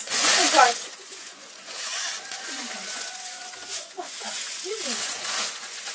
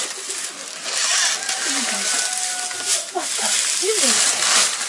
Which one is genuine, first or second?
second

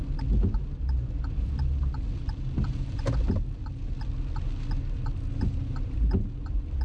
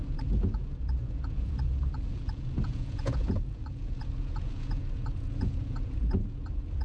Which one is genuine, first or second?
first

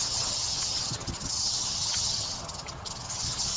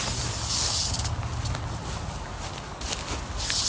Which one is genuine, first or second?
second